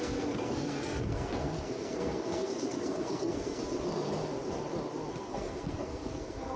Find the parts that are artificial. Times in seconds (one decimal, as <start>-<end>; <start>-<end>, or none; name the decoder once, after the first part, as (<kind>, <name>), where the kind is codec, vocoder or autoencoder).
0.0-3.6 (codec, SNAC); 5.1-6.6